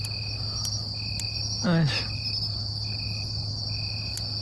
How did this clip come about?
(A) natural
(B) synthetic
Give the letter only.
A